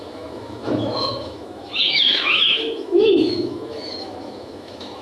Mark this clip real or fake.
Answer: fake